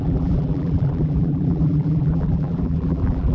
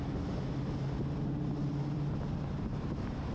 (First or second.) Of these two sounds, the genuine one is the second